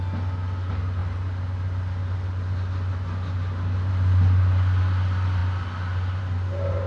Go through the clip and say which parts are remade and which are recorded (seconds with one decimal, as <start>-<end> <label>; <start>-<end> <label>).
0.0-6.9 recorded